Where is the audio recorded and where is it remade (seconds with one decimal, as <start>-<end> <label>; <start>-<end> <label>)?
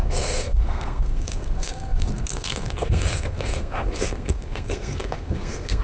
0.0-5.8 remade